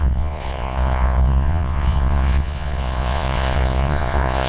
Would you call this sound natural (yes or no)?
no